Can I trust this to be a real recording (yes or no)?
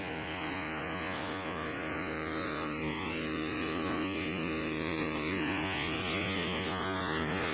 no